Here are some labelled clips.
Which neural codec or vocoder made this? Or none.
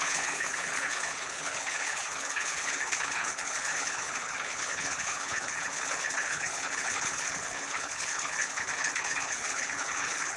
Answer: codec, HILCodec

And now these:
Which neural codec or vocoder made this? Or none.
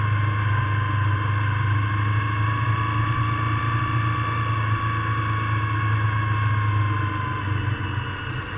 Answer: none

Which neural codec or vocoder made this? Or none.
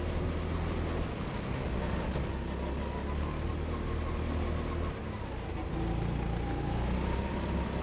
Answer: none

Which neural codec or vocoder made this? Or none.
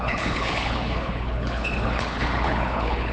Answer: codec, HILCodec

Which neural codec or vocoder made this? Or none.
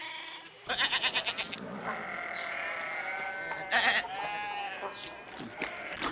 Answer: none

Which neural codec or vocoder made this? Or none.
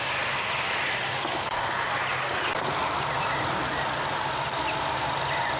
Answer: none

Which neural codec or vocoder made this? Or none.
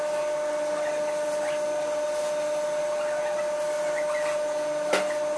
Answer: none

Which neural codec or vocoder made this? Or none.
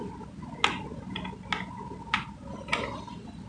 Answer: none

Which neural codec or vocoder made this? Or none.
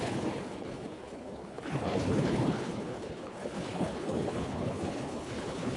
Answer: codec, HILCodec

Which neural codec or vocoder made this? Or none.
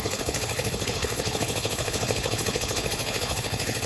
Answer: codec, HILCodec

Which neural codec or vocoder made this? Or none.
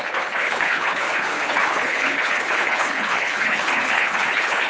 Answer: codec, HILCodec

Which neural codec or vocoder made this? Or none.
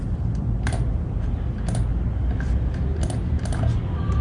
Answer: none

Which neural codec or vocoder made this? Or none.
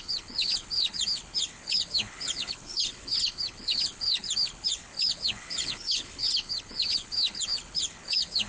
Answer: codec, HILCodec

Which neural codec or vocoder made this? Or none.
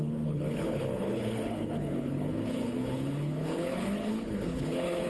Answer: codec, HILCodec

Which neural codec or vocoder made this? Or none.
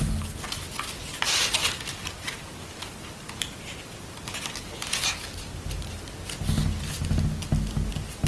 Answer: none